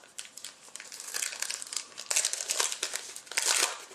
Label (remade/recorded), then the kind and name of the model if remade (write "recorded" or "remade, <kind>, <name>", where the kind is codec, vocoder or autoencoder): recorded